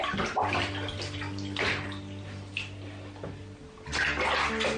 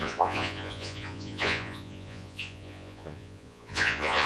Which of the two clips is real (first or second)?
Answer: first